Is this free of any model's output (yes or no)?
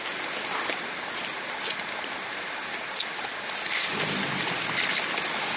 yes